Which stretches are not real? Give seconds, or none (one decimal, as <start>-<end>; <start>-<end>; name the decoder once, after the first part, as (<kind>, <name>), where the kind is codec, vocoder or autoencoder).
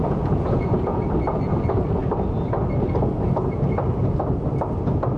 0.0-1.1 (vocoder, Vocos)